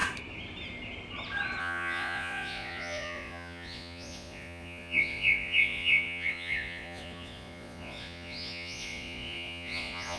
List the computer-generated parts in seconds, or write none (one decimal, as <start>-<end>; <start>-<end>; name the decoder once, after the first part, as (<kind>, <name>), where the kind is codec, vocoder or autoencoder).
1.6-10.2 (vocoder, Vocos)

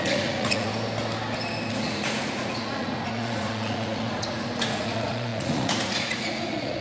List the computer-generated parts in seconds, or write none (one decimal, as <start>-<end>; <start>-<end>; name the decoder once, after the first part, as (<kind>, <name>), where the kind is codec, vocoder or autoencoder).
0.0-0.7 (vocoder, Vocos); 1.7-6.8

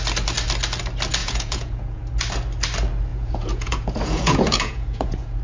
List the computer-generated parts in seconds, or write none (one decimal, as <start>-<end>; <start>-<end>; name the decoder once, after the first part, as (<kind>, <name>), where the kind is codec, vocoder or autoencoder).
1.2-2.0 (vocoder, Vocos); 3.1-5.4

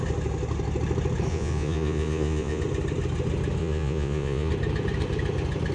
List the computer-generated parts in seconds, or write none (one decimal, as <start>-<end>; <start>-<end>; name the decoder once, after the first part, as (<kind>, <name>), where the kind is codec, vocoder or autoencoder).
1.3-2.6 (vocoder, Vocos); 3.6-4.5